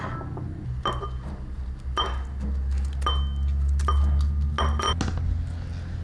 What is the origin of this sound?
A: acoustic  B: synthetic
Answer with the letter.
A